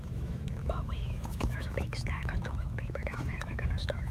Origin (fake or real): fake